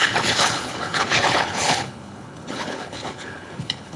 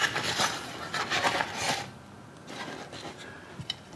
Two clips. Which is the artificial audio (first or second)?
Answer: first